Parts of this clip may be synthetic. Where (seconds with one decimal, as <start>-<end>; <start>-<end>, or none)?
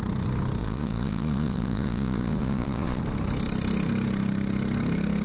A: 0.6-3.0